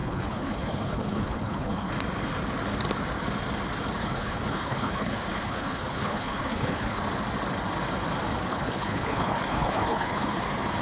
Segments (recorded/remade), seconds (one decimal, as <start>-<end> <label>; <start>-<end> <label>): 0.0-1.9 remade; 1.9-4.0 recorded; 4.0-7.0 remade; 7.0-8.5 recorded; 8.5-10.4 remade; 10.4-10.8 recorded